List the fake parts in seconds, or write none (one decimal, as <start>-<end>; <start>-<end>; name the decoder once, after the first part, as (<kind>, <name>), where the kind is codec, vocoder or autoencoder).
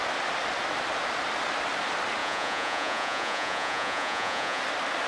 2.2-4.6 (vocoder, Vocos)